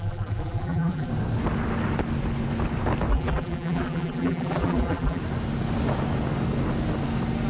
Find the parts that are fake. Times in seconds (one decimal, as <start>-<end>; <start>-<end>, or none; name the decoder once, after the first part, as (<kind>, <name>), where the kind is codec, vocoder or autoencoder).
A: 0.0-1.1 (vocoder, BigVGAN v2); 3.1-5.2